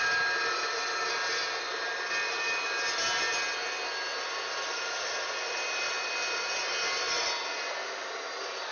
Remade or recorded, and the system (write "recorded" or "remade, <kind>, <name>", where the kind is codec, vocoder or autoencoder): recorded